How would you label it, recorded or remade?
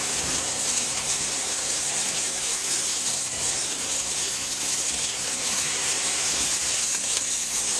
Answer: remade